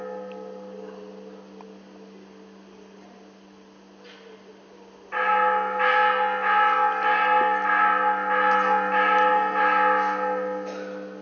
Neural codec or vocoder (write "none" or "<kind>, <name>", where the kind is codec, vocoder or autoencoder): none